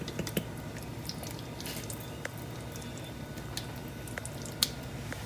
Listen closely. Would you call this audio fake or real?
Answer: real